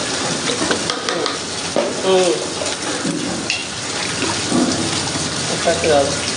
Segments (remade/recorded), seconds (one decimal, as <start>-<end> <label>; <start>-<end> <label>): 0.0-6.4 recorded

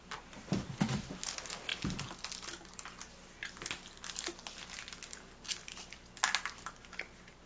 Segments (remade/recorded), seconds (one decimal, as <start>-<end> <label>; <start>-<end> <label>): 0.0-7.5 recorded

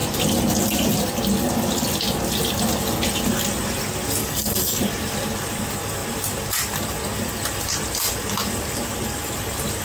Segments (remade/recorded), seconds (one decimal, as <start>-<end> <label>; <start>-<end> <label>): 0.0-4.2 recorded; 4.2-4.8 remade; 4.8-9.8 recorded